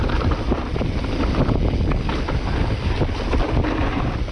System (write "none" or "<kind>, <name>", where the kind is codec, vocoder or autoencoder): none